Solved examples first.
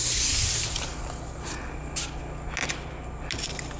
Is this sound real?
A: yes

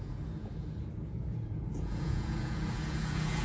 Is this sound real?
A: no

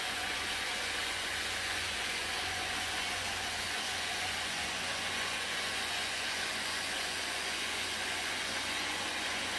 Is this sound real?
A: no